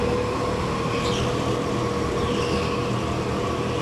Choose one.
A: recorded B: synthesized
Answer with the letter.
A